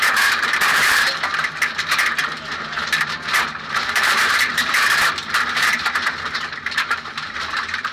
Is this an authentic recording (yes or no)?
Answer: no